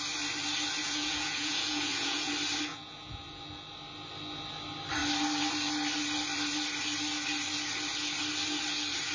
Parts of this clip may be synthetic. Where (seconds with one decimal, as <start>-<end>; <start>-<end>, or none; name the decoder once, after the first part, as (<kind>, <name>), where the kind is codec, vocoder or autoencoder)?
0.8-2.3 (vocoder, Vocos); 2.7-3.4